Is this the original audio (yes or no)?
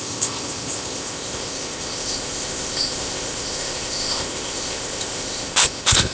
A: no